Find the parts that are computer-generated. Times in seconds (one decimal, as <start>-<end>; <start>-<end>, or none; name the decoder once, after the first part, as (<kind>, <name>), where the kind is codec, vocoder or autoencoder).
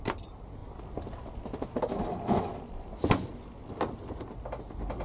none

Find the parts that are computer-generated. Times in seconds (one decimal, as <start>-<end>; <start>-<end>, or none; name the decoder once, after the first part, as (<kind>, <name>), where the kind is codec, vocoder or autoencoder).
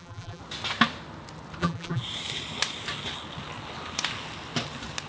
0.0-0.4 (vocoder, BigVGAN v2); 1.6-2.0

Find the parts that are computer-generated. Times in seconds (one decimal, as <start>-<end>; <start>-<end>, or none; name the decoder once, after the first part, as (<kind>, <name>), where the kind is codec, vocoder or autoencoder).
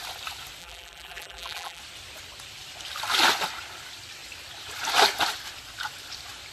0.6-1.8 (vocoder, BigVGAN v2)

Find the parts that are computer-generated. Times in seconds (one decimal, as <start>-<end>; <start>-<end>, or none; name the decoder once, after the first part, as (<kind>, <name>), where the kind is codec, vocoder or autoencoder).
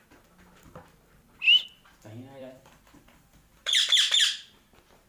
1.7-5.1 (vocoder, BigVGAN v2)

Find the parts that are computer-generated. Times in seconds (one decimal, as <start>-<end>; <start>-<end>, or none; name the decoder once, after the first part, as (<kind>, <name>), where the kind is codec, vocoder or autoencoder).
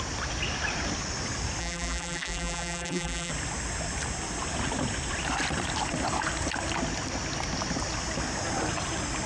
1.6-3.3 (vocoder, BigVGAN v2)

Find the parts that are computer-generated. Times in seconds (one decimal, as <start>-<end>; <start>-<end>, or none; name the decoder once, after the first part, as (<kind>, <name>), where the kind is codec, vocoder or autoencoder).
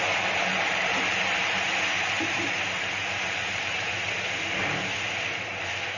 0.5-4.1 (vocoder, BigVGAN v2)